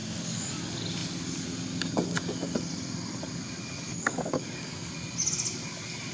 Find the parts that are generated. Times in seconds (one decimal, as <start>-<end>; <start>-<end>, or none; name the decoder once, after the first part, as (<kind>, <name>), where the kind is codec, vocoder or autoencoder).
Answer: 0.0-0.6 (codec, DAC); 3.9-4.9